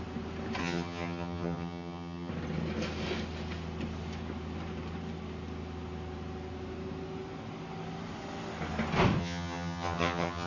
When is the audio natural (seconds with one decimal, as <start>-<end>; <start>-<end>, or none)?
0.0-0.6; 2.3-9.2